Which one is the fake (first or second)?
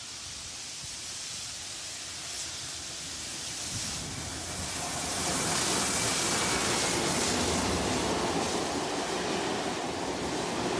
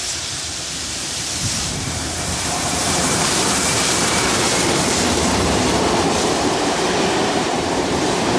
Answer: second